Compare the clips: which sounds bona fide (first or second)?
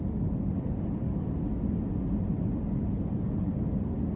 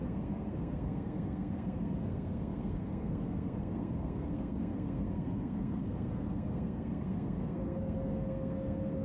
first